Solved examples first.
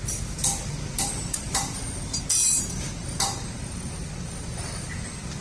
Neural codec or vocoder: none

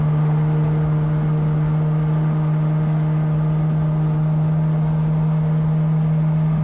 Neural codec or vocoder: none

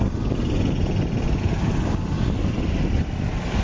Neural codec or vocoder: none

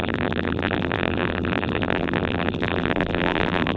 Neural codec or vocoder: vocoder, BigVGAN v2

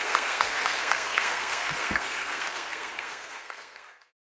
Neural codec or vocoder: codec, SNAC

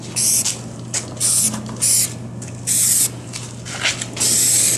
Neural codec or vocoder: none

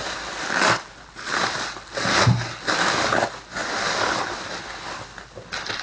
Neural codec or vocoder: none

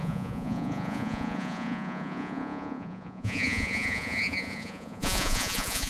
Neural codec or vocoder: vocoder, Vocos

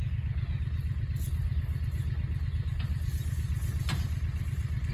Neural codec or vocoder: none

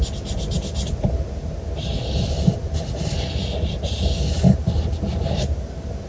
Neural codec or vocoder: none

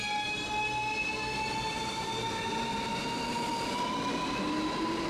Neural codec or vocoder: none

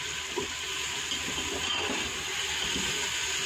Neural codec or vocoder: none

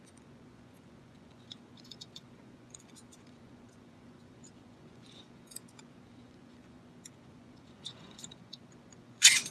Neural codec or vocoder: vocoder, Vocos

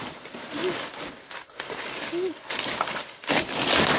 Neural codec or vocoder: none